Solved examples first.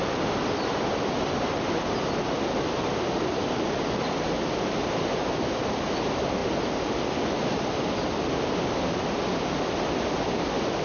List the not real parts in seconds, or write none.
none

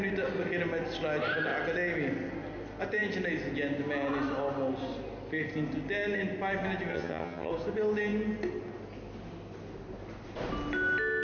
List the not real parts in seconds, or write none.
6.9-7.5 (vocoder, HiFi-GAN)

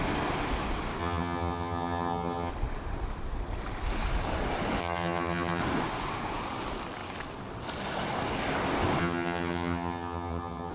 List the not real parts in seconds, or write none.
1.0-2.5 (vocoder, HiFi-GAN); 4.8-5.6; 9.0-10.7

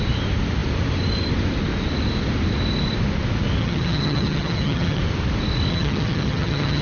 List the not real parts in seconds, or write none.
3.6-5.0 (vocoder, HiFi-GAN); 5.7-6.8

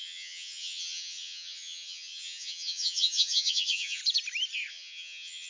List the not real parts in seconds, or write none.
0.0-4.0 (vocoder, HiFi-GAN); 4.7-5.5

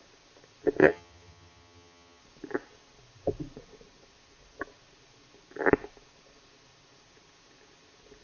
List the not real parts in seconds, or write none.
0.8-2.2 (vocoder, HiFi-GAN)

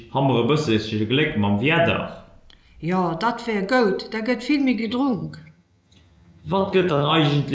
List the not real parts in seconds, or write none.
4.8-7.1 (vocoder, HiFi-GAN)

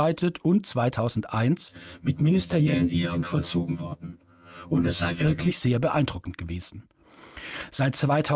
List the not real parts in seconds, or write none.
1.7-5.5 (vocoder, HiFi-GAN)